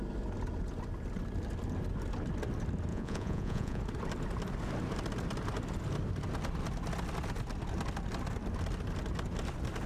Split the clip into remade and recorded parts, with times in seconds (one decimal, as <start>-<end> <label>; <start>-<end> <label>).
0.0-2.9 recorded; 2.9-3.8 remade; 3.8-9.9 recorded